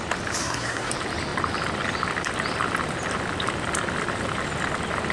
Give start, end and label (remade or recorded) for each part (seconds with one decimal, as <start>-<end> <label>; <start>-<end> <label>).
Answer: 0.0-0.4 recorded; 0.4-0.9 remade; 0.9-5.1 recorded